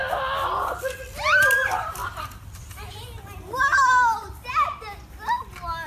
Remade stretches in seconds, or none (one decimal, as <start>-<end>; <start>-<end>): none